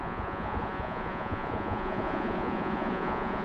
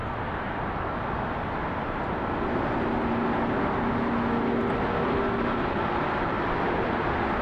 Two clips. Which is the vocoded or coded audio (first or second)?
first